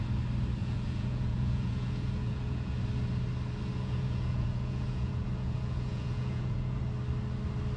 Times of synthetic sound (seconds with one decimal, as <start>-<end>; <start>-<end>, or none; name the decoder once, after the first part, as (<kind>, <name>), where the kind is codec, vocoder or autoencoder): 0.6-2.7 (vocoder, Vocos); 3.7-6.8